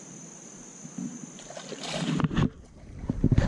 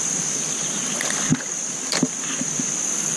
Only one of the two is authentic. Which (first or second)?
second